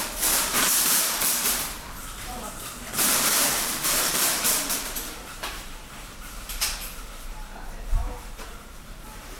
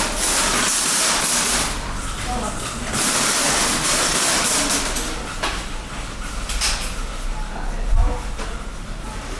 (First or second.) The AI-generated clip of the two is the first